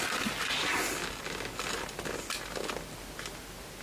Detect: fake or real real